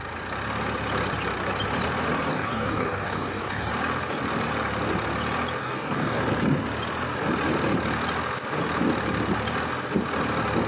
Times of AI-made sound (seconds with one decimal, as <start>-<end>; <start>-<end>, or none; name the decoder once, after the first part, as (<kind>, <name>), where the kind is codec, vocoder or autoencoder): 2.3-3.7 (codec, DAC); 5.6-6.2